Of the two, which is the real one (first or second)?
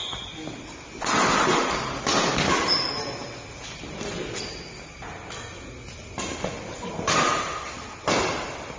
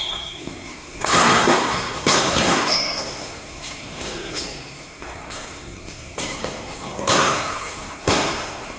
first